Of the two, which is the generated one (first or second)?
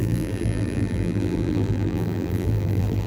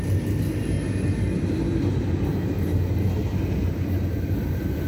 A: first